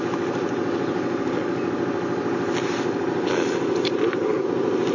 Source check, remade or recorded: recorded